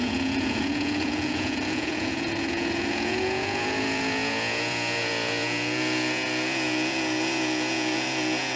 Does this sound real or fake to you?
fake